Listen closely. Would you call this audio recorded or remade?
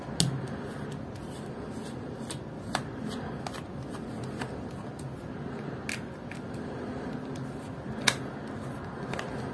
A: recorded